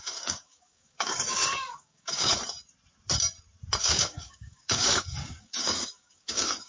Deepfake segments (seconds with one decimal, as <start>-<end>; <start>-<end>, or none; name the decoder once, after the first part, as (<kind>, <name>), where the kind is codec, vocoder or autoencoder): 0.0-2.3 (codec, DAC); 3.8-6.7